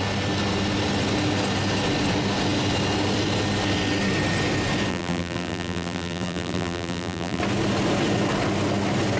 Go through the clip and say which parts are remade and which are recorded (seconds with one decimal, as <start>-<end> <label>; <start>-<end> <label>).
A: 0.0-4.9 recorded; 4.9-7.4 remade; 7.4-9.2 recorded